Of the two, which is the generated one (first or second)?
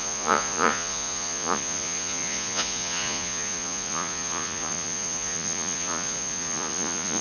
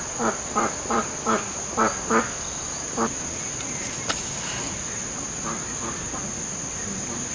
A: first